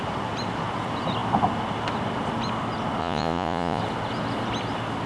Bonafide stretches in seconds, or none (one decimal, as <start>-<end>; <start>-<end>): 0.0-3.0; 3.8-5.1